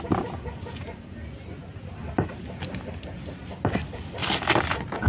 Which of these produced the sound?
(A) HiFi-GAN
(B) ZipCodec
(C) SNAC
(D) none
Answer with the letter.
D